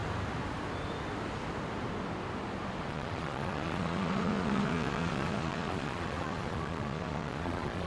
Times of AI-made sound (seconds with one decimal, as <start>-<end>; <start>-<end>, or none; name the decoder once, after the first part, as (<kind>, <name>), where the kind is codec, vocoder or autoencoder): 2.9-7.9 (vocoder, Vocos)